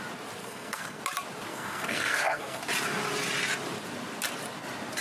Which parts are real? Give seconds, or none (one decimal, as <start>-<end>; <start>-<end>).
0.0-0.4; 1.0-1.5; 2.6-5.0